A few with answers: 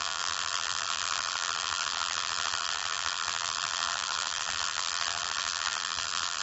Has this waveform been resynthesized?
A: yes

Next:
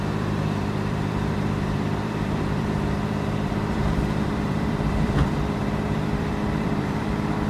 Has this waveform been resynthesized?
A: yes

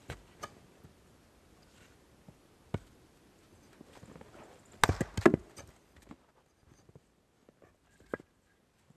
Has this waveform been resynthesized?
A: no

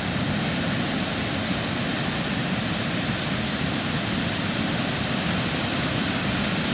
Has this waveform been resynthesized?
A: no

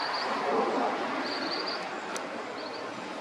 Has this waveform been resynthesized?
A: no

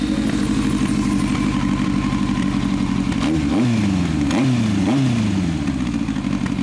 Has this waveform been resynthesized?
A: no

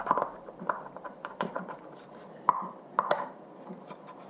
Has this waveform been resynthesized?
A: yes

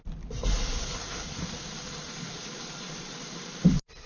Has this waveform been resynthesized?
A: yes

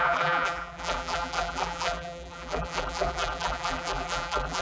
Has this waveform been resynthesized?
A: yes